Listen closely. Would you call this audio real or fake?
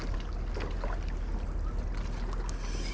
real